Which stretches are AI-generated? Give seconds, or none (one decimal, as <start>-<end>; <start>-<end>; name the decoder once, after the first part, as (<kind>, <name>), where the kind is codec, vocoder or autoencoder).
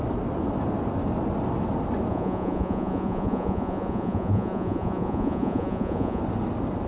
2.1-6.2 (vocoder, Vocos)